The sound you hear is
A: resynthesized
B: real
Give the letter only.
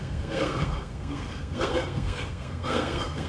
A